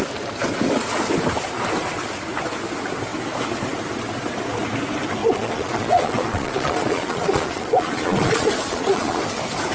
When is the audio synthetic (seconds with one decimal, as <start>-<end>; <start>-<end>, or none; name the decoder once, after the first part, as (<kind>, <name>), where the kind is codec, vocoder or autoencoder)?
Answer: 5.2-9.2 (vocoder, Vocos)